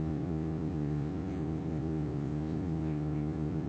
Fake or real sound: fake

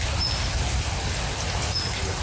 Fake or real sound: real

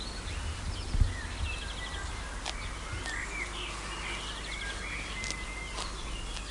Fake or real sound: real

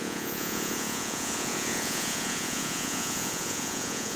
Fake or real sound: fake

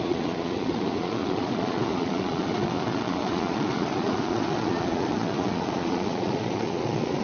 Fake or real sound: fake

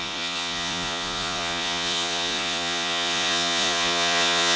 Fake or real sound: fake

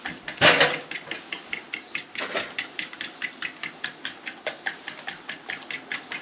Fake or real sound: real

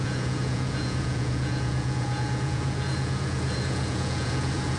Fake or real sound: fake